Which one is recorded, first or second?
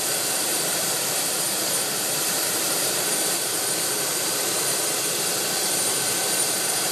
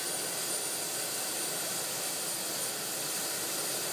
second